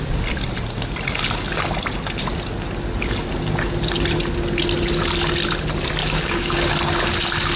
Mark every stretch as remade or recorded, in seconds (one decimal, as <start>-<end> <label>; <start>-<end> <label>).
0.0-6.0 recorded; 6.0-6.7 remade; 6.7-7.6 recorded